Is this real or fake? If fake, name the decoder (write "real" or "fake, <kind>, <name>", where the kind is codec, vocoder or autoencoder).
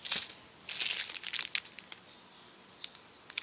real